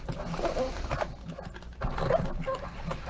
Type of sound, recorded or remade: recorded